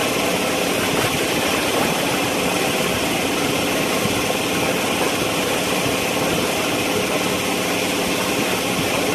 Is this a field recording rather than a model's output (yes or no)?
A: yes